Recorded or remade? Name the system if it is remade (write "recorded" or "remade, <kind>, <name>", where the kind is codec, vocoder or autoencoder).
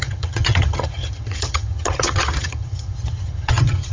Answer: remade, vocoder, HiFi-GAN